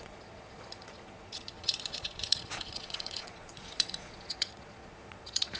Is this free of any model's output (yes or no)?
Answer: no